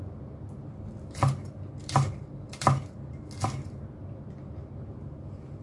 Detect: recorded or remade recorded